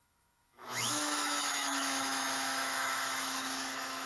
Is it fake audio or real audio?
fake